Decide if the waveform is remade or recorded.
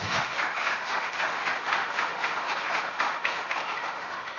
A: remade